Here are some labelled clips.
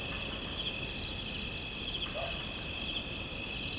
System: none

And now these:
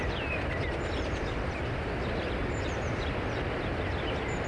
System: vocoder, BigVGAN v2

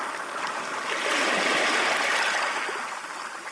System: none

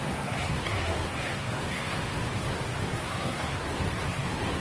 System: codec, SNAC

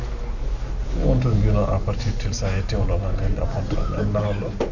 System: none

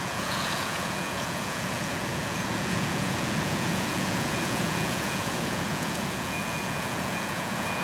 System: vocoder, Vocos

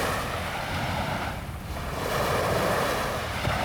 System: vocoder, BigVGAN v2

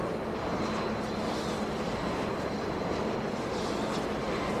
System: none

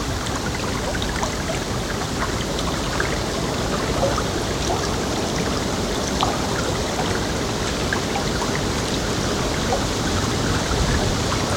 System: none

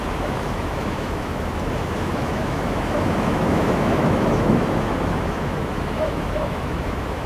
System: autoencoder, DAC-VAE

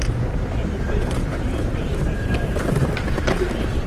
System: vocoder, BigVGAN v2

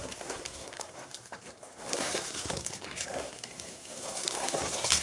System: codec, SNAC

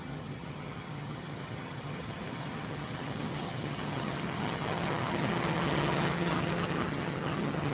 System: vocoder, HiFi-GAN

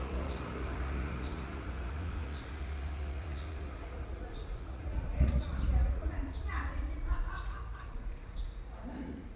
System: vocoder, Vocos